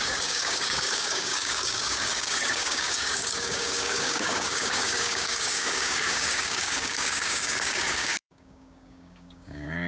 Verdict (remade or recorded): remade